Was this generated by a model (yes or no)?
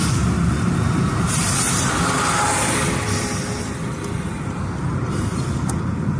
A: no